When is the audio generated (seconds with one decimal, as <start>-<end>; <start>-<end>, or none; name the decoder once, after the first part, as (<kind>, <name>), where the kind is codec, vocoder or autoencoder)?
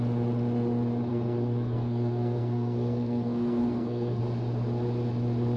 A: 1.1-4.2 (codec, SNAC)